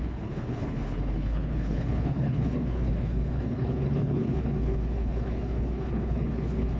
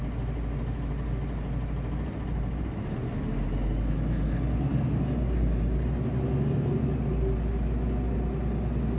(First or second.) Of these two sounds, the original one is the second